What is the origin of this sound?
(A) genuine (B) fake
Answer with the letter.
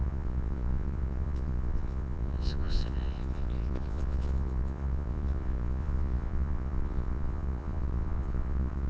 B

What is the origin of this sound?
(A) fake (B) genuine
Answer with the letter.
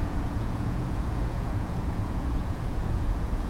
A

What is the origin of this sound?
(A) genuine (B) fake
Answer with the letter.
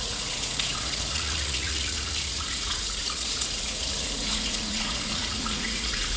B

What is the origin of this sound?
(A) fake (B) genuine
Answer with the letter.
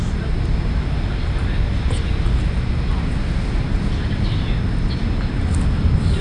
B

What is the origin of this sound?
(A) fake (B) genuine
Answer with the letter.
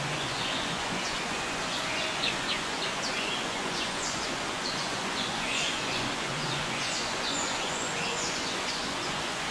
A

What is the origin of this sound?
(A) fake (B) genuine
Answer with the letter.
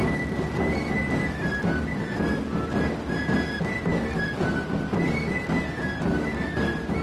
B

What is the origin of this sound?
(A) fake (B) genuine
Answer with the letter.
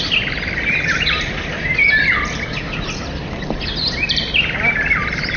B